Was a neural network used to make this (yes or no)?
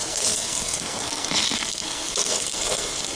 yes